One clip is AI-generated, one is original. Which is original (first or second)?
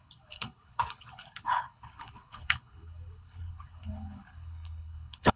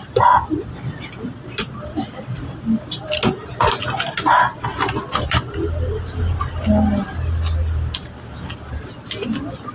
second